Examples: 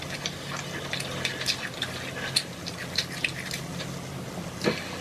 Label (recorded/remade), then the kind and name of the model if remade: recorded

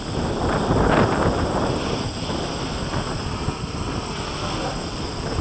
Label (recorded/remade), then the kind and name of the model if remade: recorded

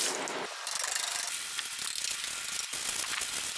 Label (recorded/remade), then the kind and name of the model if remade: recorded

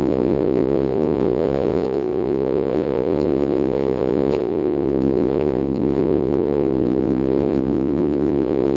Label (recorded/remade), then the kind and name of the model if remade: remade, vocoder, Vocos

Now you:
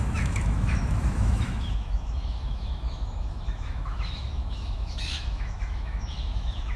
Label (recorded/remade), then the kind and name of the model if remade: remade, autoencoder, DAC-VAE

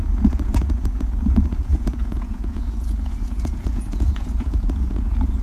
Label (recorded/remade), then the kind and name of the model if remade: remade, vocoder, Vocos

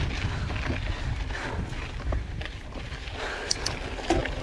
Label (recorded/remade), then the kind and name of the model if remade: recorded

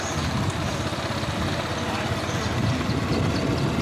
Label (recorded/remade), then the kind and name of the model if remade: recorded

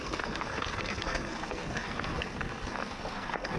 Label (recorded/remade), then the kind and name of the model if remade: remade, codec, SNAC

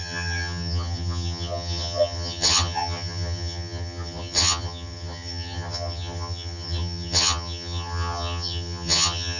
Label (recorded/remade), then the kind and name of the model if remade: remade, vocoder, HiFi-GAN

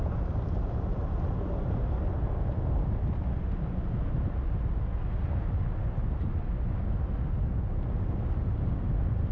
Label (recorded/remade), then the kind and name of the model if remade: recorded